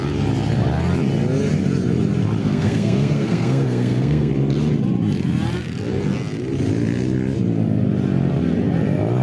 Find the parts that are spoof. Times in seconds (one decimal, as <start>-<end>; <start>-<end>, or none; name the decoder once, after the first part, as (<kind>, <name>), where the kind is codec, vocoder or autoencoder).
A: 2.4-4.3 (codec, SNAC)